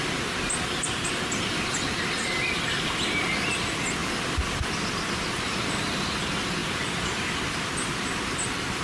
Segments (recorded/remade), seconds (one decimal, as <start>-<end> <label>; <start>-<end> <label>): 0.0-8.8 recorded